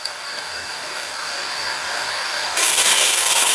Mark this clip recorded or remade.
remade